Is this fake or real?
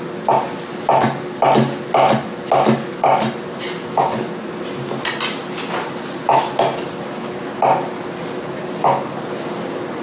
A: real